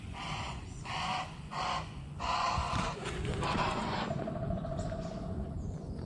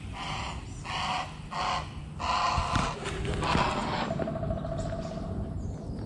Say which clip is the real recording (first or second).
second